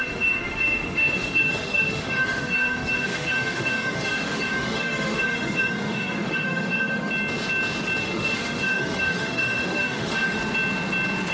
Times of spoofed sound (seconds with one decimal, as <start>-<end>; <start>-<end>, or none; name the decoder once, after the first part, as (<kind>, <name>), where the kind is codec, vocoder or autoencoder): 0.0-7.1 (autoencoder, DAC-VAE); 8.0-10.4